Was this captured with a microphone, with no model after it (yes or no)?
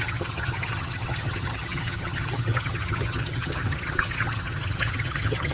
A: no